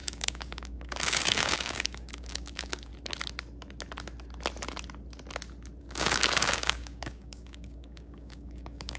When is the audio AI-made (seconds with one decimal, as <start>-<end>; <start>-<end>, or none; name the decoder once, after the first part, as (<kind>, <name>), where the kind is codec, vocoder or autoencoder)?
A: 0.0-2.9 (codec, DAC); 5.8-9.0